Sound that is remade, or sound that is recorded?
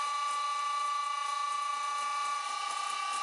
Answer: recorded